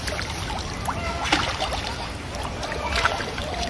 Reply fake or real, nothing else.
fake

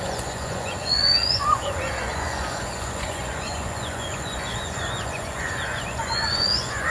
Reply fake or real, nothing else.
fake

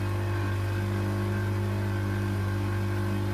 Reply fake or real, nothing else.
real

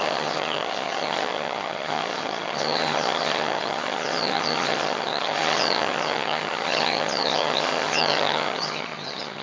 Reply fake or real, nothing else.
fake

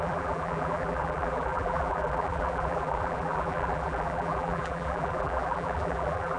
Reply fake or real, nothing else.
fake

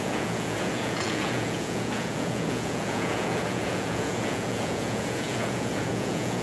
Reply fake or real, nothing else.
fake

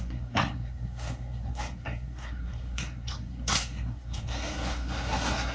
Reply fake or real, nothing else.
fake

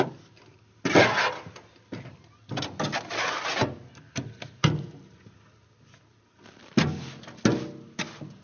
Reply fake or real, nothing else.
real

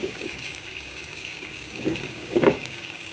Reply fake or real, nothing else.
fake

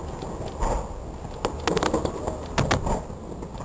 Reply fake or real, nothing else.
real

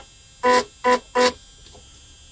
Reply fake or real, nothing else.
real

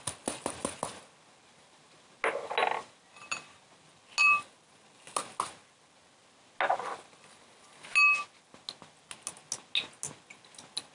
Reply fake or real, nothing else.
real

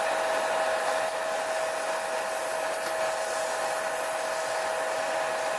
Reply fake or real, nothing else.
real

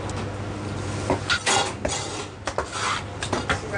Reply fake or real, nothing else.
real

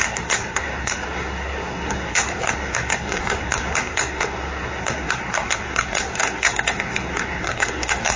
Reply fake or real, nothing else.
fake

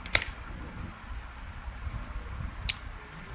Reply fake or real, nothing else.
real